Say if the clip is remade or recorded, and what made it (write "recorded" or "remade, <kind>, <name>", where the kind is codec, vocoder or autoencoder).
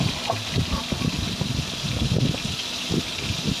recorded